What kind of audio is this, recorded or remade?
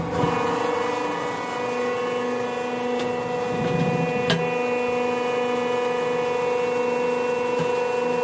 recorded